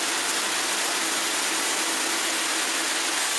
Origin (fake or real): real